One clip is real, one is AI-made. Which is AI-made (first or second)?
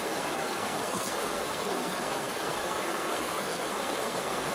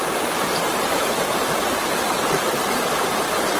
first